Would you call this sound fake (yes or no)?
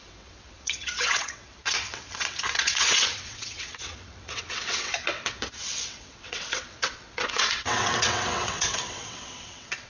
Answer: yes